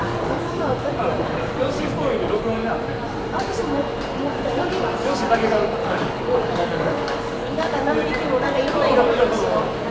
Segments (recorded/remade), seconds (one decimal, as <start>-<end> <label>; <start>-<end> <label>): 0.0-0.6 remade; 0.6-1.5 recorded; 1.5-2.4 remade; 2.4-5.8 recorded; 5.8-7.9 remade; 7.9-9.9 recorded